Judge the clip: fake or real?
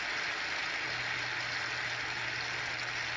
real